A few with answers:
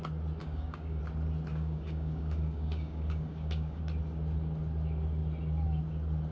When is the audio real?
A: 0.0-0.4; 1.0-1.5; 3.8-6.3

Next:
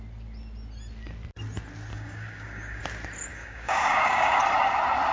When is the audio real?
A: 0.0-1.9; 2.8-3.3; 4.4-5.1

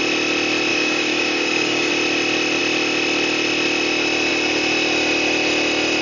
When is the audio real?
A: 0.0-0.7; 1.9-6.0

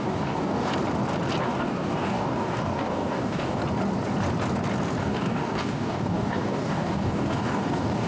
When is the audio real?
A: 0.7-1.4; 3.6-5.0

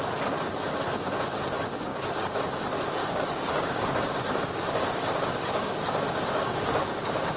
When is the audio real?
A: 0.0-1.9; 2.4-3.0

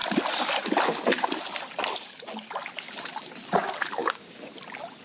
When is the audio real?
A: 0.0-4.0; 4.5-5.0

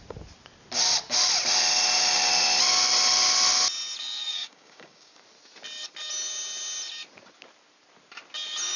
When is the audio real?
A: 0.0-4.3; 5.1-8.8